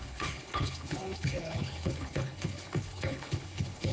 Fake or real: fake